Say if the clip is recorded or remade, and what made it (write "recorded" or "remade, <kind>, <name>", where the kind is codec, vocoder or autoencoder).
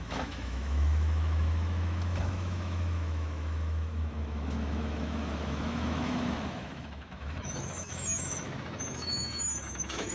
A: remade, autoencoder, DAC-VAE